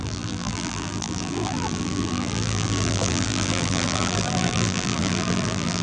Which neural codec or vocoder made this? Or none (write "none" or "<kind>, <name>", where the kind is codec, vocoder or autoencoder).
vocoder, BigVGAN v2